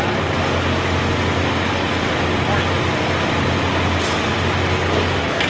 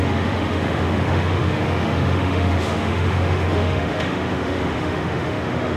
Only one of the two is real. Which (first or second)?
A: first